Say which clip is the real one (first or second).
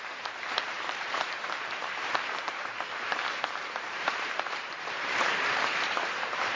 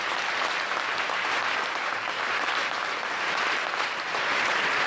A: second